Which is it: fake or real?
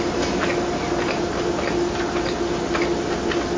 real